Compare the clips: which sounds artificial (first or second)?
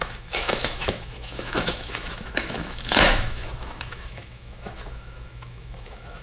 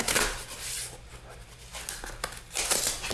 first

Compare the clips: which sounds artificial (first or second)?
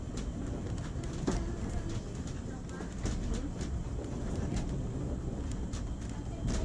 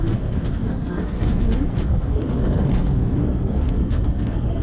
second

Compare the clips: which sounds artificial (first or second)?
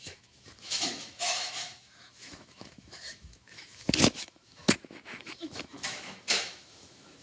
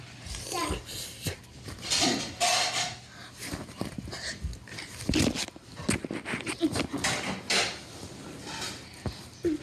first